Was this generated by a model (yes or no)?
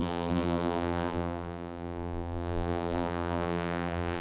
yes